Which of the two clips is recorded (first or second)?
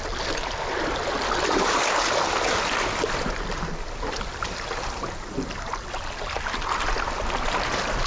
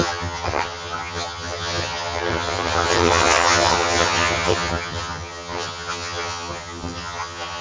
first